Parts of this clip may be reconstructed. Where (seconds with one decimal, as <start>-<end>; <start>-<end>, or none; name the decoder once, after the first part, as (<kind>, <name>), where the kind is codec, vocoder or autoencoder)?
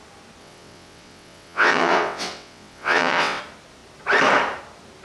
0.4-3.4 (vocoder, WaveNeXt)